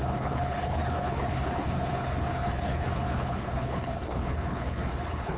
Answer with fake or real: fake